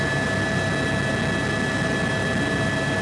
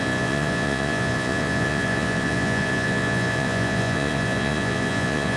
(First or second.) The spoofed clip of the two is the second